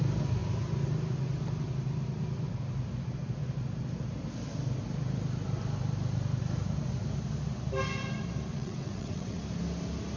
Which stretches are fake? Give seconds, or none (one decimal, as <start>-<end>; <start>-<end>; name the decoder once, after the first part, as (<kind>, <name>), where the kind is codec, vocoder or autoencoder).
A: 8.5-9.4 (vocoder, WaveNeXt)

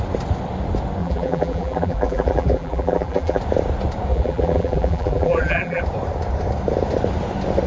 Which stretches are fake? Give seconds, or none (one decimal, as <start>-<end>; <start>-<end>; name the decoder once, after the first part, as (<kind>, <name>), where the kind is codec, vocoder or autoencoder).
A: 1.0-3.4 (vocoder, BigVGAN v2); 4.1-5.8

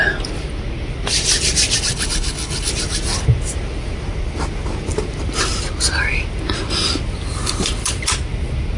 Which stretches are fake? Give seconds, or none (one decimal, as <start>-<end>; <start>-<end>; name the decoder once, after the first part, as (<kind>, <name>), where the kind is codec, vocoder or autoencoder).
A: 1.9-2.7 (codec, HILCodec)

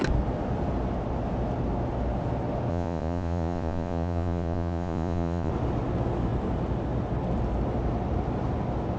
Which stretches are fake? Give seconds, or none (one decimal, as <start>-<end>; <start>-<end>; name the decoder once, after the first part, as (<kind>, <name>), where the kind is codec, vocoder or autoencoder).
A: 2.7-5.5 (vocoder, Vocos)

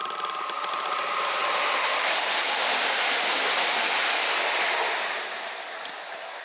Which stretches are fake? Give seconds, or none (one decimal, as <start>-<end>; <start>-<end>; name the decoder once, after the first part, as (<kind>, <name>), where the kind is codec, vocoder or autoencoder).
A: 0.0-1.4 (vocoder, BigVGAN v2); 1.9-6.4

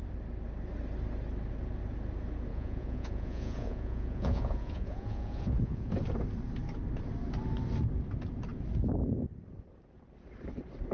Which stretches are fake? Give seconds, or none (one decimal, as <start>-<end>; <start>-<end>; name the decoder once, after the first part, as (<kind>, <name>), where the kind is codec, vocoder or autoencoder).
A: 2.5-5.9 (vocoder, Vocos)